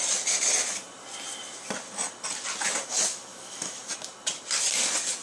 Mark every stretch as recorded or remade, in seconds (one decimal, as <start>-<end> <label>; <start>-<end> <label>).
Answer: 0.0-2.9 recorded; 2.9-3.9 remade; 3.9-5.2 recorded